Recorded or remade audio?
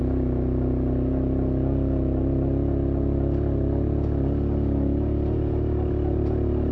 recorded